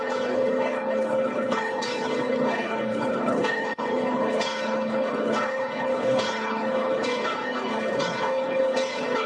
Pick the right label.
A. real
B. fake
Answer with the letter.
B